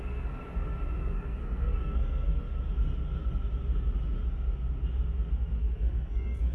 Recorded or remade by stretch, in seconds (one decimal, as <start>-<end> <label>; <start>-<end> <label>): 0.0-0.4 remade; 0.4-1.0 recorded; 1.0-2.3 remade; 2.3-5.6 recorded; 5.6-6.5 remade